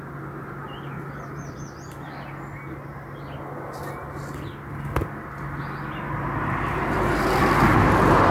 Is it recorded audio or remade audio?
recorded